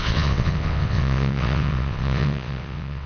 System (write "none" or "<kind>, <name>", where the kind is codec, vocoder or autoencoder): vocoder, WaveNeXt